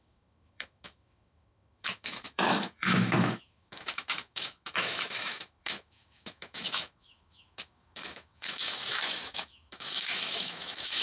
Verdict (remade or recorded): remade